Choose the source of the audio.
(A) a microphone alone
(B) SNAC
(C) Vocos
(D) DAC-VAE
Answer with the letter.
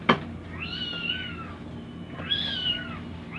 A